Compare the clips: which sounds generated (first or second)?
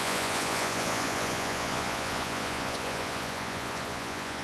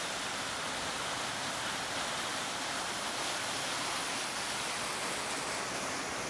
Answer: first